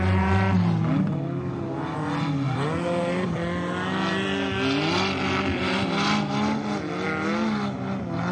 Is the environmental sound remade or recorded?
recorded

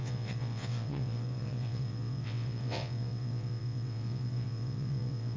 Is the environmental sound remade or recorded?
remade